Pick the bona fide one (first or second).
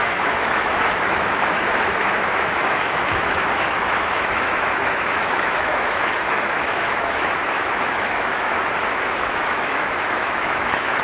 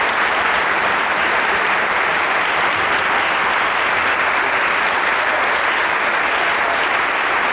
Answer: second